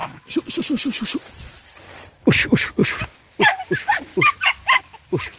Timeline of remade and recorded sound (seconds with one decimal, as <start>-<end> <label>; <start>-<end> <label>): 0.0-0.6 remade; 0.6-4.1 recorded; 4.1-4.8 remade; 4.8-5.4 recorded